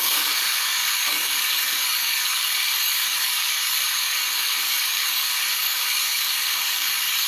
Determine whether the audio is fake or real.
fake